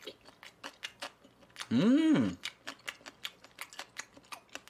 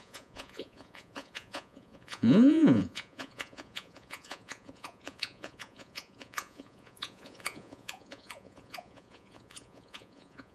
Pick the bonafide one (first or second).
first